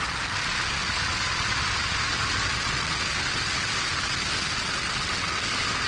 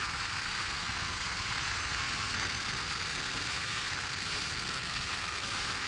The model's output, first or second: second